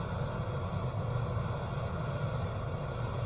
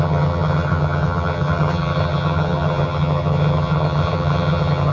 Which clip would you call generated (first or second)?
second